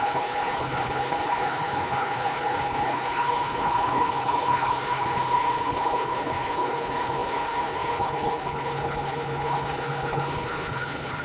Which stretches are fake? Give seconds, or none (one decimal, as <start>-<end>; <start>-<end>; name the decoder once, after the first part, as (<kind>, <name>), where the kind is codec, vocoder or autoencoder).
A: 0.0-11.2 (codec, HILCodec)